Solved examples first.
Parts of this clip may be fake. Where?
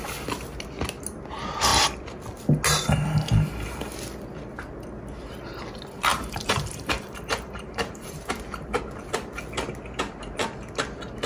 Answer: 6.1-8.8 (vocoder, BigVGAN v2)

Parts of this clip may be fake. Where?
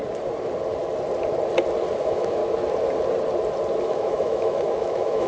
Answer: 2.0-2.4 (autoencoder, DAC-VAE); 3.8-5.3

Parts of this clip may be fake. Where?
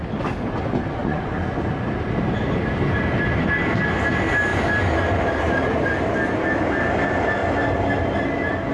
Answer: 1.0-1.7 (vocoder, Vocos)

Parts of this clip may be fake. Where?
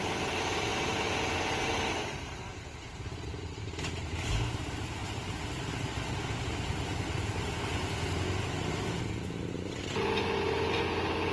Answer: 2.5-3.1 (vocoder, Vocos)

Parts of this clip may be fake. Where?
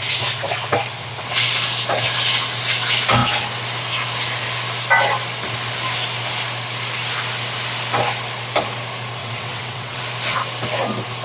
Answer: 9.2-10.0 (vocoder, WaveNeXt)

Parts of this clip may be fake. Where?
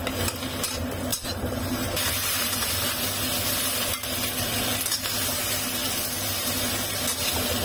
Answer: 1.1-2.7 (vocoder, BigVGAN v2)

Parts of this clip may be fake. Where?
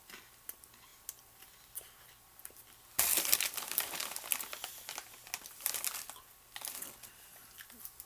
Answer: none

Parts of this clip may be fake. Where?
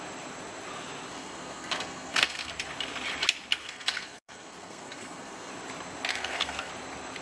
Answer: 1.1-2.5 (codec, SNAC); 3.6-5.5; 6.1-6.7